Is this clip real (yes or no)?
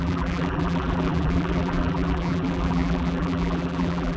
no